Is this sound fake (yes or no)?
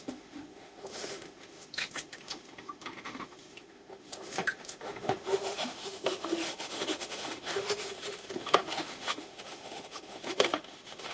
yes